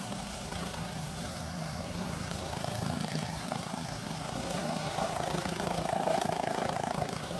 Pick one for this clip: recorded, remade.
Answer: remade